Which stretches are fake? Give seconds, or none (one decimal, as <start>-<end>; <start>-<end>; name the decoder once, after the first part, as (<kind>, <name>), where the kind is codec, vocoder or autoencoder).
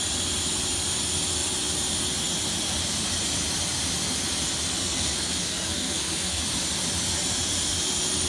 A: 4.8-6.4 (codec, SNAC)